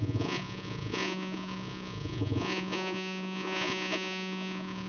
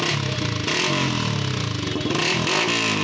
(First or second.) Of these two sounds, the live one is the second